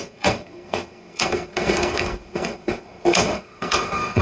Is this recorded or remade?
remade